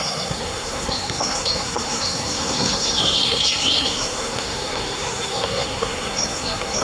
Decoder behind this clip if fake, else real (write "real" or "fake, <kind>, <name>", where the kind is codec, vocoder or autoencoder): fake, codec, SNAC